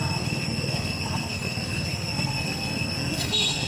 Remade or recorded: remade